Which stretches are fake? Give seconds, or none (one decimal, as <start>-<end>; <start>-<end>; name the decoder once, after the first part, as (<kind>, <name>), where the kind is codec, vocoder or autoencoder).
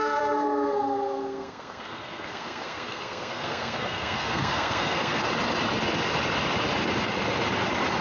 0.0-5.2 (codec, SNAC)